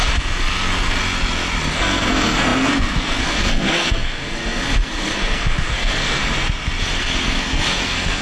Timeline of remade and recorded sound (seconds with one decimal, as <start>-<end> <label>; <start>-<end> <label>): 0.0-1.0 remade; 1.0-1.7 recorded; 1.7-6.2 remade; 6.2-7.0 recorded; 7.0-8.2 remade